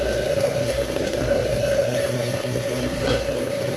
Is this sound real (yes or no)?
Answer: no